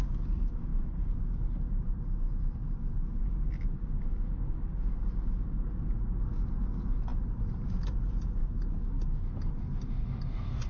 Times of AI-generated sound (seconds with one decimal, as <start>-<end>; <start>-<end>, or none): none